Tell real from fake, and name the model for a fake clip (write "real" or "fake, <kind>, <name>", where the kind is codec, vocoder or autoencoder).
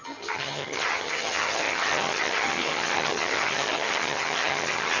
fake, vocoder, HiFi-GAN